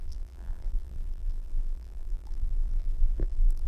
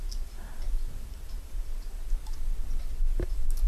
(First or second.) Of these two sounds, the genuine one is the second